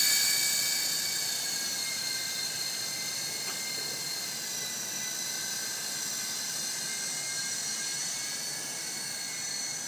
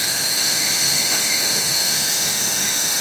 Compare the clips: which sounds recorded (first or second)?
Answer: first